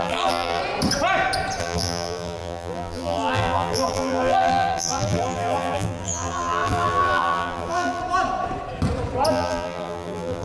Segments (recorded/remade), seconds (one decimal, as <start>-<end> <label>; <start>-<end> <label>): 0.0-0.6 remade; 0.6-1.6 recorded; 1.6-8.0 remade; 8.0-9.3 recorded; 9.3-10.4 remade